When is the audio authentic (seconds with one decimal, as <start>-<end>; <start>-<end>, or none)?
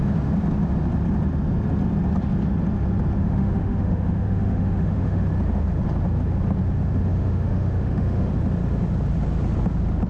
0.0-3.2; 5.2-7.1; 8.3-10.1